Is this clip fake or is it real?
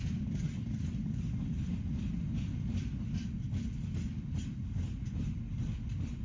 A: real